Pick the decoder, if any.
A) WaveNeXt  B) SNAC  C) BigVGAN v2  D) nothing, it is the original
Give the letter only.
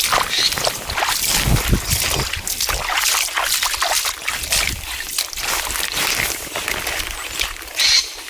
D